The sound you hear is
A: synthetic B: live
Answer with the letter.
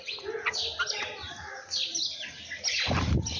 B